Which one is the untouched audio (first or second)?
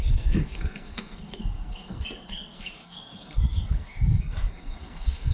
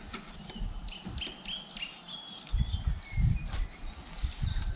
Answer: second